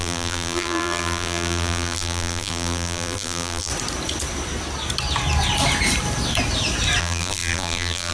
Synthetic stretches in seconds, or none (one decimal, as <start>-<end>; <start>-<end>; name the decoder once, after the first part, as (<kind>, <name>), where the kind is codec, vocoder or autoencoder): 0.0-3.7 (vocoder, BigVGAN v2); 7.0-8.1